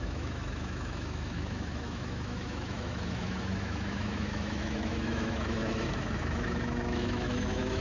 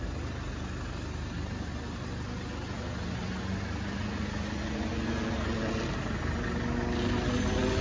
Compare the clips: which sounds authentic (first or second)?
second